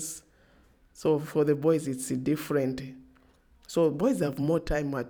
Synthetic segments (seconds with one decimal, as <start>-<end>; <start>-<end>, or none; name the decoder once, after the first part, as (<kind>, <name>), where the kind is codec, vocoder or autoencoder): 0.0-0.6 (vocoder, BigVGAN v2); 3.7-5.1